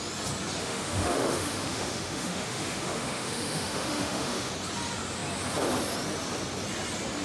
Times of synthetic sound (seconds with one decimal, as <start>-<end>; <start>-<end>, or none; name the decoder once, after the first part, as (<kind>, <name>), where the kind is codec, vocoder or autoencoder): 0.6-4.5 (autoencoder, DAC-VAE)